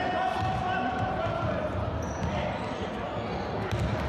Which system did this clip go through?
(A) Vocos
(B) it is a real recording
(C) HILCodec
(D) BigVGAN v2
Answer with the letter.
B